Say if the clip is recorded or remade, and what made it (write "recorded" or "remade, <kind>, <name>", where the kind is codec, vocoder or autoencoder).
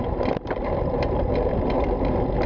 recorded